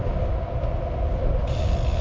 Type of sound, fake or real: real